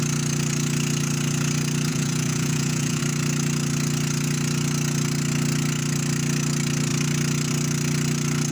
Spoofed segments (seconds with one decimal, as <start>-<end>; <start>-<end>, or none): 1.9-3.0